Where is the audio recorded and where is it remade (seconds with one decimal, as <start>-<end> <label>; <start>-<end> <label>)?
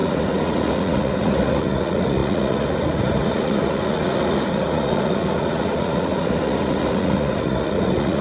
0.0-8.2 remade